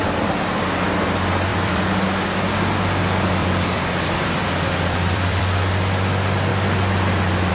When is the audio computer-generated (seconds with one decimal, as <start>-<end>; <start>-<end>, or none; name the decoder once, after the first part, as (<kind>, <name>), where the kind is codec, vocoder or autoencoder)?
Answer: 1.5-2.1 (vocoder, BigVGAN v2); 3.4-5.4